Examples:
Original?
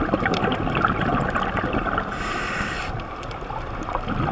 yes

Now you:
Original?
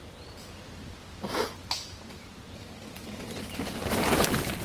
yes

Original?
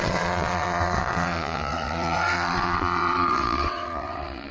no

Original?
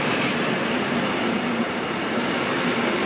yes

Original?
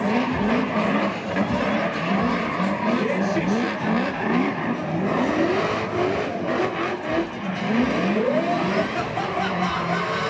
yes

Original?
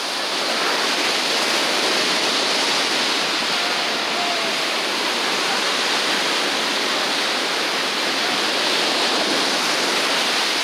yes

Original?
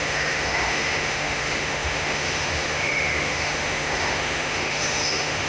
no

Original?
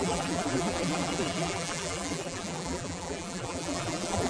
no